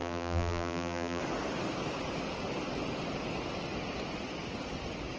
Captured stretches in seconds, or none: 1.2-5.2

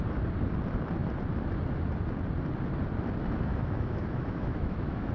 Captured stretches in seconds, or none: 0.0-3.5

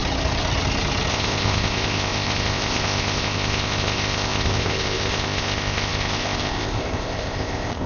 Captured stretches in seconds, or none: 0.0-1.1

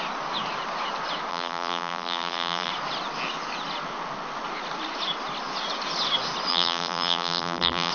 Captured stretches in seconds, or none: 0.0-1.3; 2.7-6.5

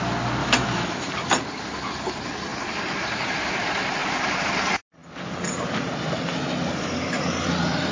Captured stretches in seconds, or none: 0.0-0.4; 1.1-7.9

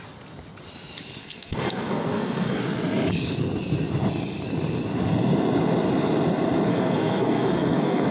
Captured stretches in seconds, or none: 0.0-1.2; 2.6-6.7

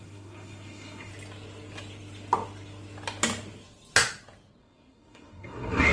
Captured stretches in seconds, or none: 1.1-4.6